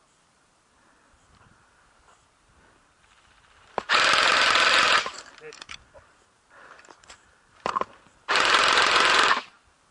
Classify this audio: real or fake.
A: fake